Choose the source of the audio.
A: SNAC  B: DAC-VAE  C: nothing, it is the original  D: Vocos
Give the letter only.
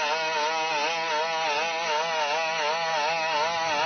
C